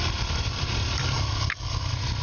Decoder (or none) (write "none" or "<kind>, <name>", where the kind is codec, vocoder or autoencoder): none